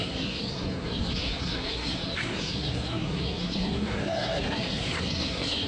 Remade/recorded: remade